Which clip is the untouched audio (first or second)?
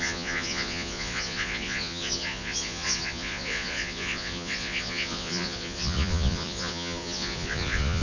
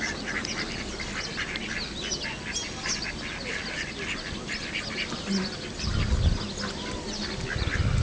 second